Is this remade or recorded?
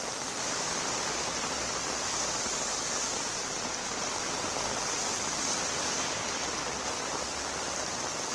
recorded